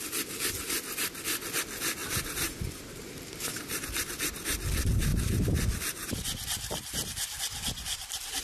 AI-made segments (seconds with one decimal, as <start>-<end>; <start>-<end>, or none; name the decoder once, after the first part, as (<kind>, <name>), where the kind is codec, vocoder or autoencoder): 2.0-3.8 (vocoder, BigVGAN v2); 5.1-8.4